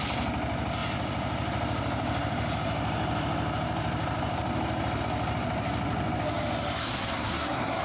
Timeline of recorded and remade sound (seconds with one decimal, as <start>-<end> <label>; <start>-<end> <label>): 0.0-6.8 recorded; 6.8-7.8 remade